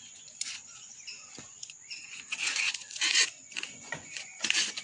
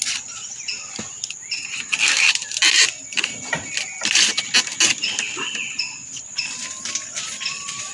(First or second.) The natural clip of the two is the second